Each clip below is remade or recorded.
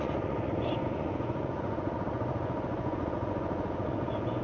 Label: remade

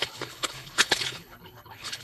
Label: remade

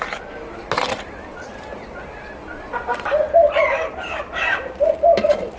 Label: recorded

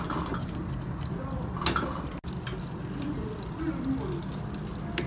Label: recorded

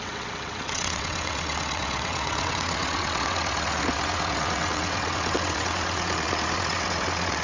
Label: remade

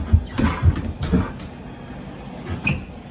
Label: recorded